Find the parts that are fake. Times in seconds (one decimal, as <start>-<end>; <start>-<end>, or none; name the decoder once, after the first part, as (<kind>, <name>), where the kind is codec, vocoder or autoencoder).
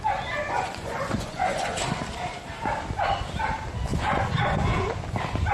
0.4-1.8 (vocoder, Vocos); 3.9-4.9